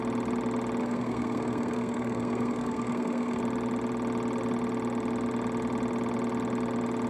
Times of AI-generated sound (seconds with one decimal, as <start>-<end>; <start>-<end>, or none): 0.8-3.4